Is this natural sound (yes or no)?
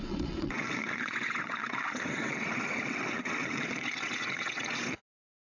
no